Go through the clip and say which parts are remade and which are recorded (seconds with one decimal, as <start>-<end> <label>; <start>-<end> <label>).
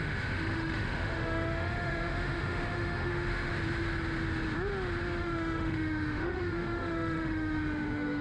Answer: 0.0-3.1 remade; 3.1-5.2 recorded; 5.2-8.2 remade